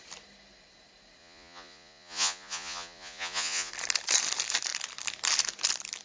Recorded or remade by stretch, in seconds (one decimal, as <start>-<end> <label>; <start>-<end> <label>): 0.0-1.2 recorded; 1.2-3.7 remade; 3.7-6.0 recorded